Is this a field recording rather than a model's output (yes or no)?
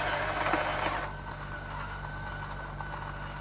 yes